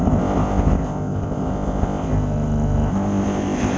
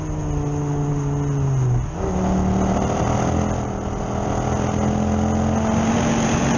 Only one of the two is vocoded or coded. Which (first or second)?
first